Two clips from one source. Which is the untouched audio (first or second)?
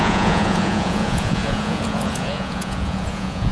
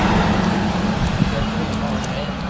second